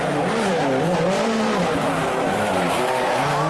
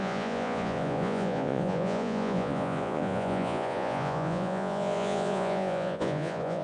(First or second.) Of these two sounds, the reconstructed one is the second